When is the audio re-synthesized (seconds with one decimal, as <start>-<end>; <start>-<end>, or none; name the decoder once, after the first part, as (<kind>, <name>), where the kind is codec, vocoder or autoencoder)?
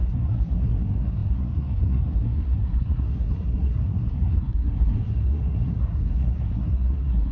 0.0-7.3 (codec, SNAC)